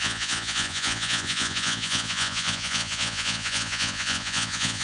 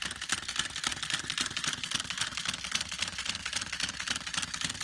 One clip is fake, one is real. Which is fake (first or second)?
first